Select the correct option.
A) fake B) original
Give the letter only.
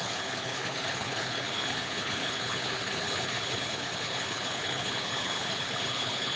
A